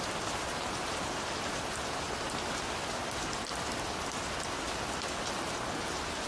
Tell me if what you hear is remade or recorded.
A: recorded